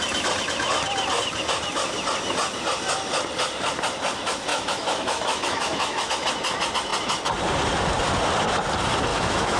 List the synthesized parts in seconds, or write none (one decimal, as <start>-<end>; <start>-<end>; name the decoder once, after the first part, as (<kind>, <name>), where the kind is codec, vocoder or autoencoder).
4.5-6.1 (autoencoder, DAC-VAE); 9.1-9.6